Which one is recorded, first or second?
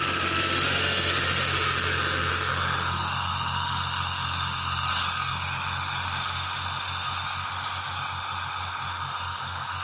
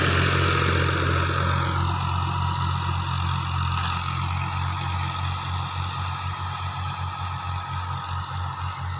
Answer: second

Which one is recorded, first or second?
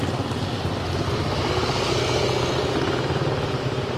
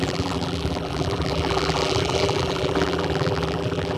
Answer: first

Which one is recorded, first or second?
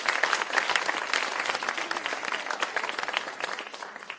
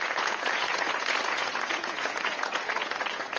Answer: first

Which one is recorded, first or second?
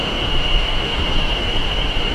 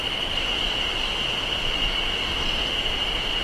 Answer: second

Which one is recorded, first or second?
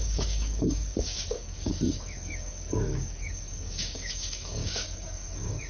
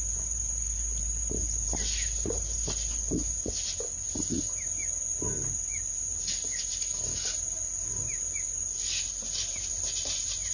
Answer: second